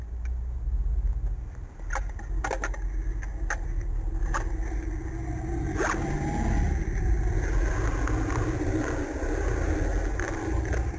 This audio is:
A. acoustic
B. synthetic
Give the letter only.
A